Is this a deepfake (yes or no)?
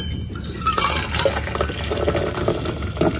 no